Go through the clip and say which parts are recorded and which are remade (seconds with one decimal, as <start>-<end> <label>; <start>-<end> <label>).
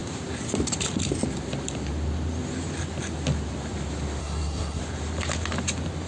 0.0-4.2 recorded; 4.2-4.8 remade; 4.8-6.1 recorded